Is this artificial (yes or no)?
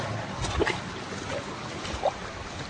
no